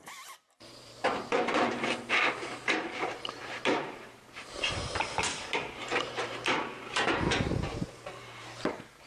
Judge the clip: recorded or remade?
remade